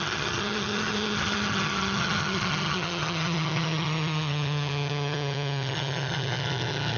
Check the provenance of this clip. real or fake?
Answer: fake